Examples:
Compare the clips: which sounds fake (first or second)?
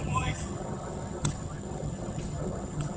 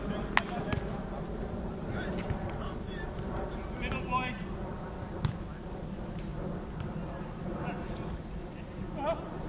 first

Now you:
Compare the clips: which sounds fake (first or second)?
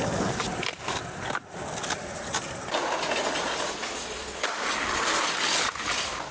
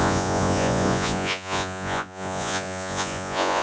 second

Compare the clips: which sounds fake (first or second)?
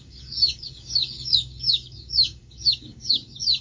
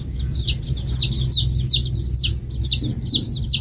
first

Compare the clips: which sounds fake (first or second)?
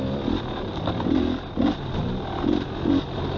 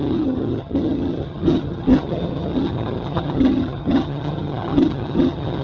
second